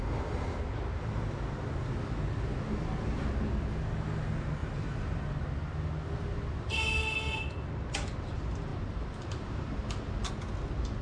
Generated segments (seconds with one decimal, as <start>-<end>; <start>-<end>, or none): 4.6-5.4; 8.7-10.3